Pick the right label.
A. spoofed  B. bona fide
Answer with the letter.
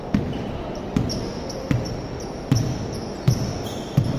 B